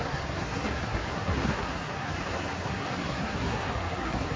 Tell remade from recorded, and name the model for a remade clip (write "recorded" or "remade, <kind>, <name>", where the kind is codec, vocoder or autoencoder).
remade, codec, SNAC